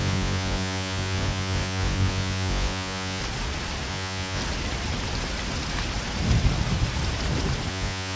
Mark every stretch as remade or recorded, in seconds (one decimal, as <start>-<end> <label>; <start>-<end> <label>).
0.0-3.2 remade; 3.2-3.9 recorded; 3.9-4.4 remade; 4.4-7.7 recorded; 7.7-8.2 remade